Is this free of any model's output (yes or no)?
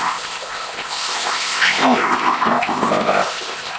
no